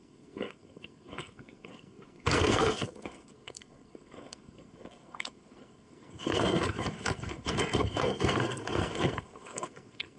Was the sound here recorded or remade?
remade